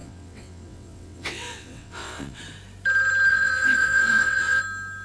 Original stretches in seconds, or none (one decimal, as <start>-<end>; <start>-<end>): 2.4-3.3; 4.6-5.0